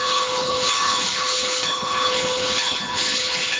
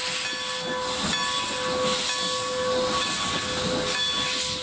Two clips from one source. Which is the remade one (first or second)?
first